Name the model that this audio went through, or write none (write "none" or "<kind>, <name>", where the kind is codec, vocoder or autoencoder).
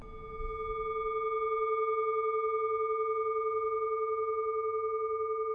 none